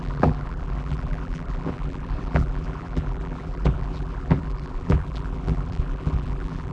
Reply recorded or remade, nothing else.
remade